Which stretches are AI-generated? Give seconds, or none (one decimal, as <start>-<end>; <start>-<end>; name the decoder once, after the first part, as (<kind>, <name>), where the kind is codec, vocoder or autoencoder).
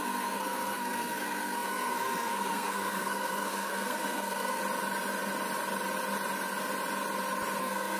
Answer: 0.0-4.6 (codec, SNAC); 7.6-8.0